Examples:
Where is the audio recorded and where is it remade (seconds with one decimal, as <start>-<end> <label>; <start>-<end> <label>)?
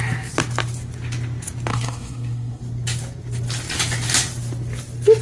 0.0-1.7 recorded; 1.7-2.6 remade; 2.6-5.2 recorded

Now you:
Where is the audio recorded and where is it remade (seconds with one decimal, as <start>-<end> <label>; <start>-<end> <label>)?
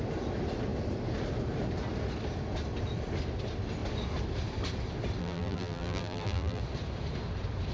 0.0-5.2 recorded; 5.2-6.6 remade; 6.6-7.7 recorded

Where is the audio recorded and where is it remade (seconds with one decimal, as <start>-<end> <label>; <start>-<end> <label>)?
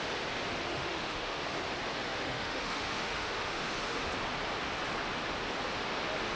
0.0-0.7 recorded; 0.7-1.4 remade; 1.4-2.1 recorded; 2.1-3.8 remade; 3.8-6.4 recorded